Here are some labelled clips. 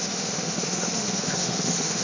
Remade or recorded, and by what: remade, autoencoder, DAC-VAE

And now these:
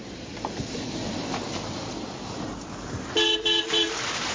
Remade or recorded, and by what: recorded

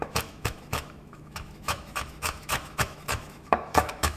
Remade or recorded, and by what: remade, autoencoder, DAC-VAE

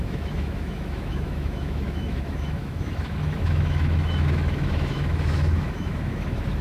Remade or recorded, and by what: remade, autoencoder, DAC-VAE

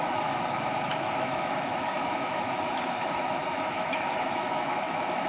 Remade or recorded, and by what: remade, autoencoder, DAC-VAE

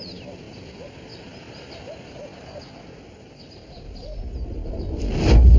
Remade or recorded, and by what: recorded